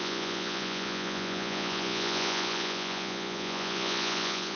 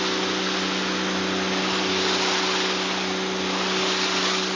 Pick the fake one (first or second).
first